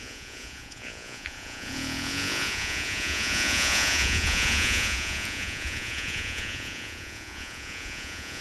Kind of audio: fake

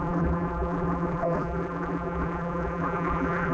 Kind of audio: fake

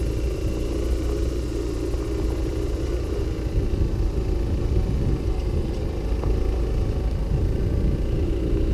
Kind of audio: real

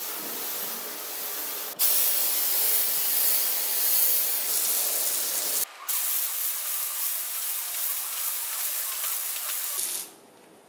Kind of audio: real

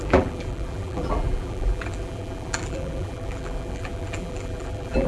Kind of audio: fake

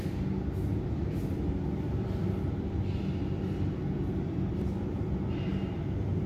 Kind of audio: real